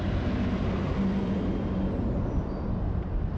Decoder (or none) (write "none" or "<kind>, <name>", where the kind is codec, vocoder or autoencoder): none